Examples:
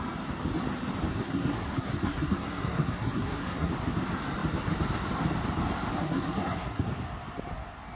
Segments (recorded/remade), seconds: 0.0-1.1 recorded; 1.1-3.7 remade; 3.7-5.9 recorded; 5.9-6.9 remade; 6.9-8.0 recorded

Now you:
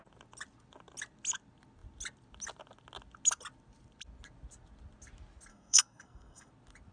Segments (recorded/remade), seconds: 0.0-5.5 recorded; 5.5-6.5 remade; 6.5-6.9 recorded

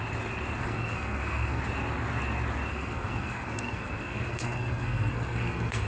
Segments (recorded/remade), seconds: 0.0-0.6 recorded; 0.6-1.6 remade; 1.6-2.7 recorded; 2.7-5.9 remade

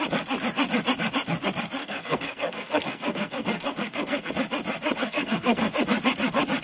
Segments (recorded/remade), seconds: 0.0-1.8 recorded; 1.8-4.3 remade; 4.3-5.0 recorded; 5.0-5.7 remade; 5.7-6.6 recorded

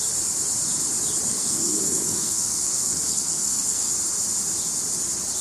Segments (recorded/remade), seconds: 0.0-1.3 recorded; 1.3-3.9 remade; 3.9-5.4 recorded

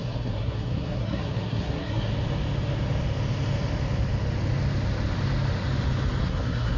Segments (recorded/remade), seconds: 0.0-2.1 remade; 2.1-6.2 recorded; 6.2-6.8 remade

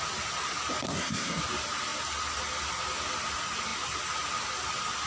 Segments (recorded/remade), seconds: 0.0-0.9 recorded; 0.9-1.4 remade; 1.4-5.1 recorded

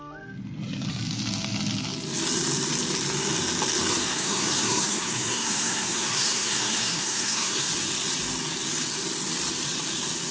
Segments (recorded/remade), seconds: 0.0-3.9 recorded; 3.9-7.7 remade; 7.7-10.3 recorded